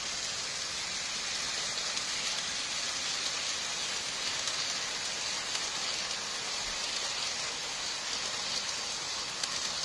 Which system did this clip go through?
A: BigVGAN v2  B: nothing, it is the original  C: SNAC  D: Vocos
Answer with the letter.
B